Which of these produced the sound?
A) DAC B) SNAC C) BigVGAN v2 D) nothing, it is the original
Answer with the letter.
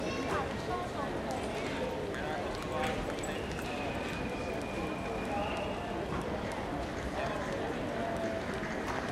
D